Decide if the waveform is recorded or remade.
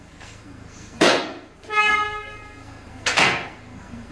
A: remade